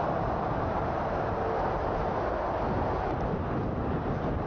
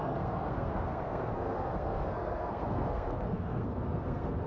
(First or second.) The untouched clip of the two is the first